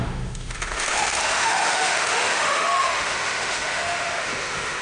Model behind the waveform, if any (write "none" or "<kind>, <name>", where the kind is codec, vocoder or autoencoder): autoencoder, DAC-VAE